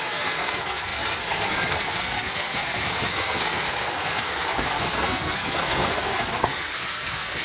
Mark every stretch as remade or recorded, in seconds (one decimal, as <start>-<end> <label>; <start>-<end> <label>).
0.0-7.4 remade